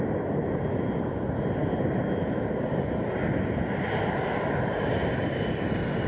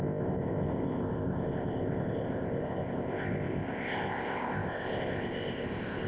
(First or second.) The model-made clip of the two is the second